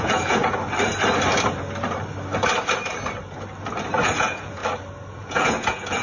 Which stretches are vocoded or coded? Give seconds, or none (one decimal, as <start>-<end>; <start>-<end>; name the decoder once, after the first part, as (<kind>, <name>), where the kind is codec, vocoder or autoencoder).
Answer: 0.0-0.4 (vocoder, Vocos); 4.0-4.6; 5.1-6.0